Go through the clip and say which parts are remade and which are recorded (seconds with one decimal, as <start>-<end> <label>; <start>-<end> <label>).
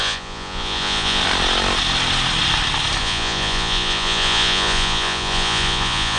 0.0-1.2 remade; 1.2-3.0 recorded; 3.0-6.2 remade